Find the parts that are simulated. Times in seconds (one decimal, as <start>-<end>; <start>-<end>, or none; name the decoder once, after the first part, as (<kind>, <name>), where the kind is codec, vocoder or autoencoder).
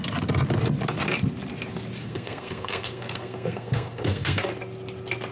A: 2.0-4.5 (codec, SNAC)